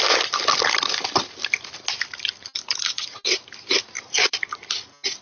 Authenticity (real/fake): real